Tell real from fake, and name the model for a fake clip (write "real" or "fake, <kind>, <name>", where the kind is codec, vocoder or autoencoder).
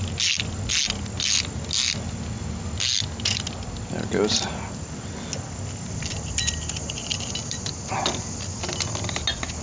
real